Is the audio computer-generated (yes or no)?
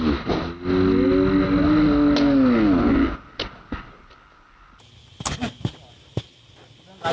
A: no